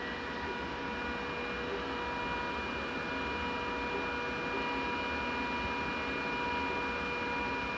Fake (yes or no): no